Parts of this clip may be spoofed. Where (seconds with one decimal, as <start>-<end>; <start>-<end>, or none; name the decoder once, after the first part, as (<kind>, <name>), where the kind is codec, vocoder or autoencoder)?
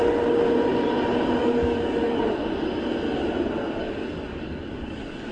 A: 1.4-2.2 (codec, DAC); 3.8-5.3